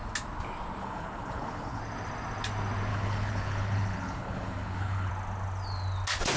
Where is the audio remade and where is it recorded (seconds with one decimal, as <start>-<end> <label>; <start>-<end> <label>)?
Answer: 0.0-0.8 recorded; 0.8-1.8 remade; 1.8-2.9 recorded; 2.9-5.1 remade; 5.1-6.4 recorded